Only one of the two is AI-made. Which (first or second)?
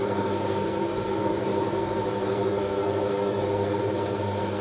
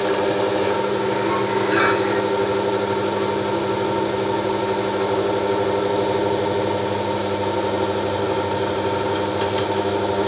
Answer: first